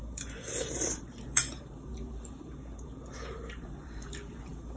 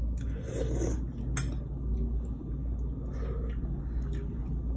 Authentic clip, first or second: second